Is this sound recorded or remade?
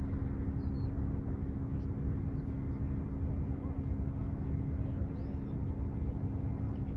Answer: recorded